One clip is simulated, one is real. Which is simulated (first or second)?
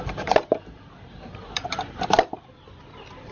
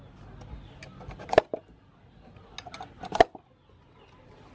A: first